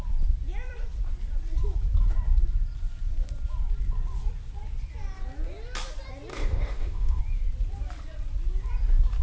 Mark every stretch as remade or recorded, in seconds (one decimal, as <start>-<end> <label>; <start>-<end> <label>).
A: 0.0-6.3 recorded; 6.3-7.2 remade; 7.2-9.2 recorded